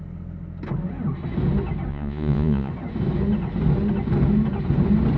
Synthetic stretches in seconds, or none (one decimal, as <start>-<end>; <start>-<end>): 1.9-2.7